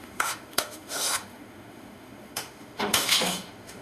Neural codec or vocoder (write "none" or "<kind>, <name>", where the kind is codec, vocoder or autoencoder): autoencoder, DAC-VAE